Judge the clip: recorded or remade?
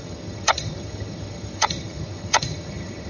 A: remade